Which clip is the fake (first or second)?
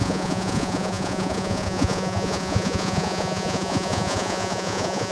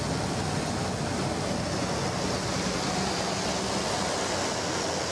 first